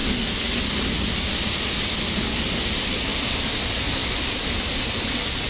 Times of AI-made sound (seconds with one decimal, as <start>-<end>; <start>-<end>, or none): none